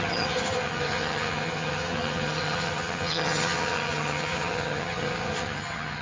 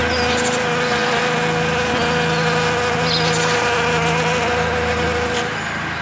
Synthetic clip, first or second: first